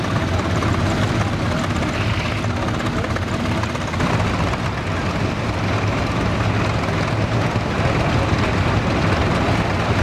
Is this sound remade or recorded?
recorded